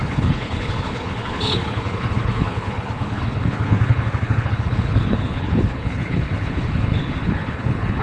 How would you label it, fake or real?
fake